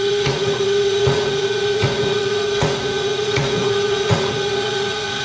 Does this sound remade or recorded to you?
remade